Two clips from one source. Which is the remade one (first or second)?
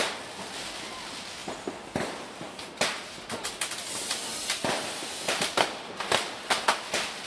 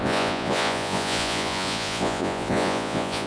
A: second